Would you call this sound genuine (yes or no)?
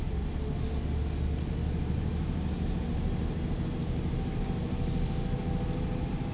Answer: yes